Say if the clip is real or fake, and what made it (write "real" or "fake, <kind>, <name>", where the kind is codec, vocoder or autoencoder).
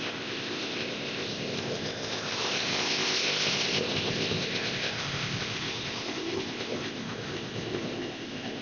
fake, codec, ZipCodec